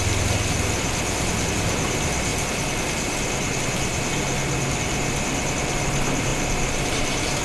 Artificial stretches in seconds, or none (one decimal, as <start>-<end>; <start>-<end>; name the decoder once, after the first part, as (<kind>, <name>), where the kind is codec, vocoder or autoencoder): 6.3-7.4 (vocoder, BigVGAN v2)